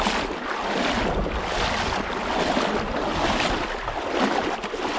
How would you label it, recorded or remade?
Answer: recorded